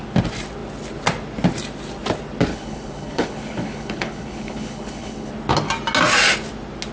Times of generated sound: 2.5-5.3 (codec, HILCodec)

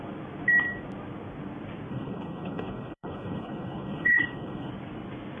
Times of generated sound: 1.9-4.7 (codec, HILCodec)

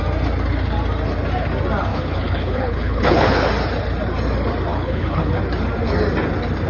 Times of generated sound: 1.9-3.5 (codec, HILCodec); 4.7-5.4

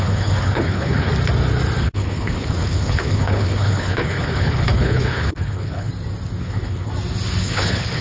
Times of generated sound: 0.0-1.1 (codec, HILCodec); 1.8-5.9; 6.4-6.9; 7.4-8.0

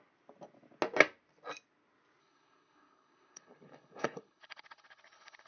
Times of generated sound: 2.2-5.5 (codec, HILCodec)

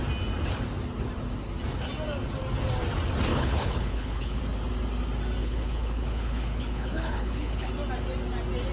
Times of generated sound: 3.3-4.4 (codec, HILCodec); 5.4-7.7